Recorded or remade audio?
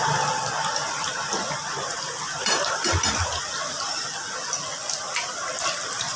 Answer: recorded